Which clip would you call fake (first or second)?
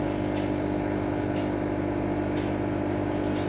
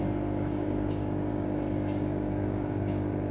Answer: second